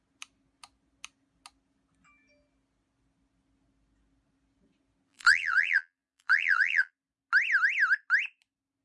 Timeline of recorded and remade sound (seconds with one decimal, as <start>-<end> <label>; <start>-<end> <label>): 0.0-5.1 recorded; 5.1-6.9 remade; 6.9-8.8 recorded

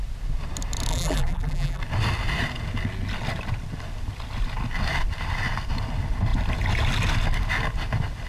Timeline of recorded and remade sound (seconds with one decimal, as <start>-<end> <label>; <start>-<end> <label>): 0.0-0.9 recorded; 0.9-1.8 remade; 1.8-8.3 recorded